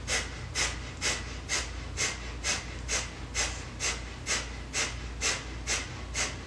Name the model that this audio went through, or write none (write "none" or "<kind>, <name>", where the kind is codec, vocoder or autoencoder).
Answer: none